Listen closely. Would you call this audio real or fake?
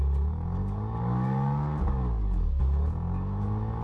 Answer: fake